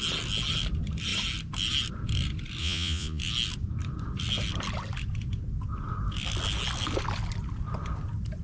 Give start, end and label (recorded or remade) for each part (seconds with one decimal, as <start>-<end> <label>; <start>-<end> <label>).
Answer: 0.0-2.6 recorded; 2.6-3.2 remade; 3.2-8.4 recorded